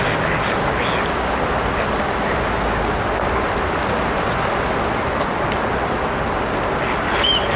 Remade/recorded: recorded